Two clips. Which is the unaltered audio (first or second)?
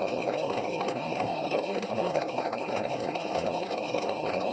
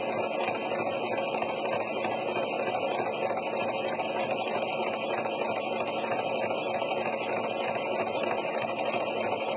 second